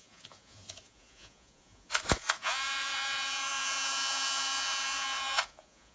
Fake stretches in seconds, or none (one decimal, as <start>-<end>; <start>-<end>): 0.0-5.9